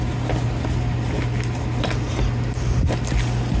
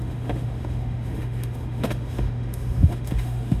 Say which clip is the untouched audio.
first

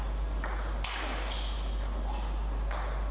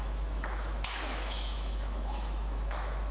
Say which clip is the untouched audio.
first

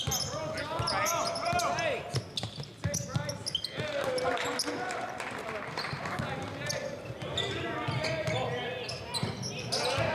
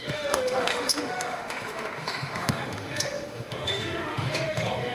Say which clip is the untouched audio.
first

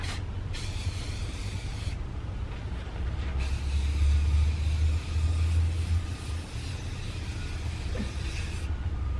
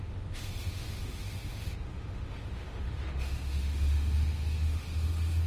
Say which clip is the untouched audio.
first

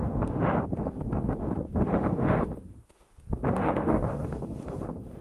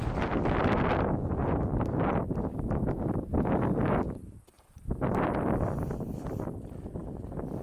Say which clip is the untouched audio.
second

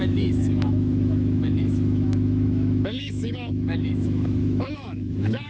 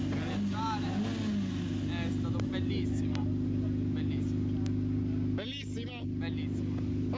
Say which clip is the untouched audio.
second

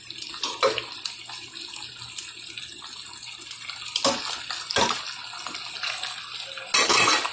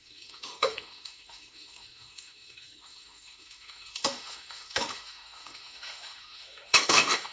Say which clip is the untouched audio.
first